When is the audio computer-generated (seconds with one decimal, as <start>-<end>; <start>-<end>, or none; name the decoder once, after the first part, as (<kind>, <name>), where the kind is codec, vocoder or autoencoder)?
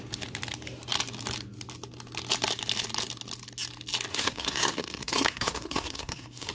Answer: 4.1-6.5 (codec, SNAC)